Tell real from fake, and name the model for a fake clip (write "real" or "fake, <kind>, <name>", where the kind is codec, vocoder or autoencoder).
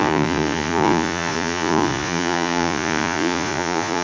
fake, vocoder, Vocos